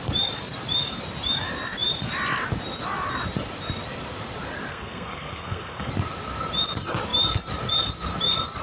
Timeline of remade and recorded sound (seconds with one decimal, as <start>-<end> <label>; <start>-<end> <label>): 0.0-4.7 recorded; 4.7-5.9 remade; 5.9-8.6 recorded